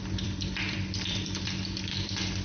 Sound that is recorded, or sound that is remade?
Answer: remade